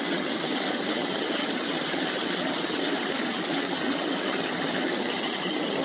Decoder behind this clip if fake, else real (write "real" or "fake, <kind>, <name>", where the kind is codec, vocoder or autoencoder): fake, vocoder, HiFi-GAN